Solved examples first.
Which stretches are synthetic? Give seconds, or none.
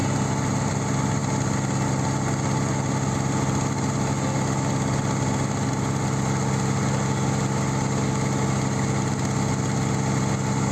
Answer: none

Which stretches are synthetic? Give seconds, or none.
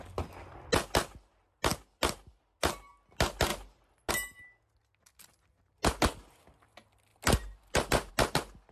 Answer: none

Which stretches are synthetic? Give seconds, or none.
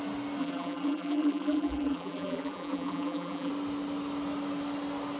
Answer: 0.4-3.5 (vocoder, BigVGAN v2)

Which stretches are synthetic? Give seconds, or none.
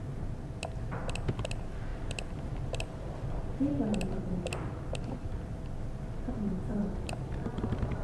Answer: 1.9-3.1 (vocoder, BigVGAN v2); 6.7-8.0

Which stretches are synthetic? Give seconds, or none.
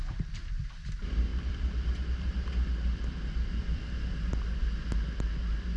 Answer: 1.3-4.3 (vocoder, BigVGAN v2)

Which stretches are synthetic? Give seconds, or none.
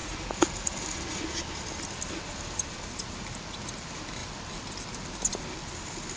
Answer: none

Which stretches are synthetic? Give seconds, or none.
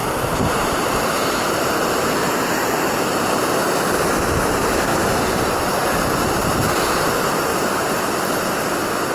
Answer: 0.0-3.3 (vocoder, BigVGAN v2); 4.9-5.5; 7.5-8.1